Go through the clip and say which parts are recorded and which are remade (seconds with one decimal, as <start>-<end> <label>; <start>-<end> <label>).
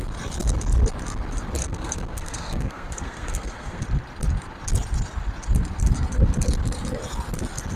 0.0-1.6 recorded; 1.6-3.8 remade; 3.8-7.8 recorded